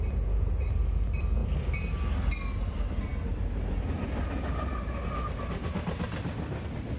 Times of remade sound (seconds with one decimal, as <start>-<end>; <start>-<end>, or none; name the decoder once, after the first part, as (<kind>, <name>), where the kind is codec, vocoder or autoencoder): none

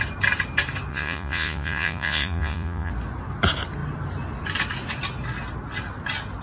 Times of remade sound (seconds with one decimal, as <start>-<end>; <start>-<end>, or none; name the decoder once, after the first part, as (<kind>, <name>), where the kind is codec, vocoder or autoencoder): 0.9-2.9 (vocoder, Vocos)

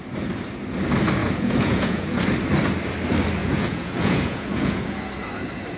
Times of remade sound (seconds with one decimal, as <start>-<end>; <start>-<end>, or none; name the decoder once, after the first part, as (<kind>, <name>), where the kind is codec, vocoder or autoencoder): 1.2-2.2 (vocoder, Vocos); 3.4-5.0

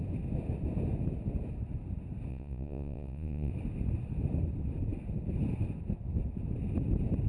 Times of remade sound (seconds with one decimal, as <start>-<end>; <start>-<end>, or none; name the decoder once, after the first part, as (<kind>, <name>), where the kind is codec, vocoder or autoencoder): 2.3-3.5 (vocoder, Vocos)